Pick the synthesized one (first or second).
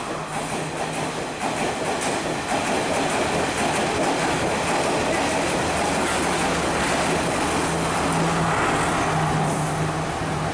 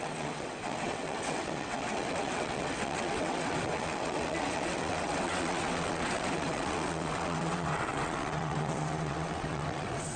second